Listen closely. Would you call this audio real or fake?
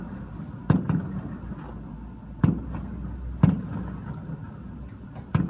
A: real